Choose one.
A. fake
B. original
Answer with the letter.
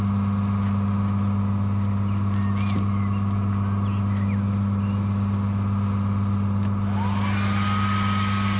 B